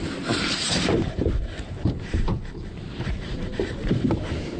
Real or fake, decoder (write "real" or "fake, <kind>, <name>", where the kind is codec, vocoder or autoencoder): fake, vocoder, BigVGAN v2